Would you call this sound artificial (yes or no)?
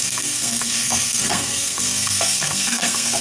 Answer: yes